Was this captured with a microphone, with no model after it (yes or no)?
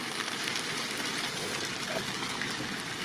yes